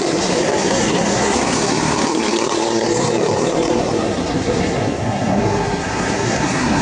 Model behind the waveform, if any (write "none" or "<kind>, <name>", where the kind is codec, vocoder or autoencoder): codec, SNAC